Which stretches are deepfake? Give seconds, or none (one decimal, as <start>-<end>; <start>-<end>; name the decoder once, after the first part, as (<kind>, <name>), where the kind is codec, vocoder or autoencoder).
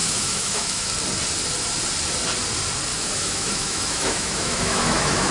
0.0-0.9 (autoencoder, DAC-VAE); 2.9-5.3